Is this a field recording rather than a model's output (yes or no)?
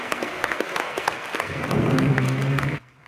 no